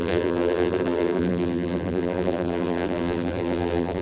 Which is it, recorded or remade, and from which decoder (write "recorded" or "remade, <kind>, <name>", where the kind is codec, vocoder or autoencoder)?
remade, vocoder, BigVGAN v2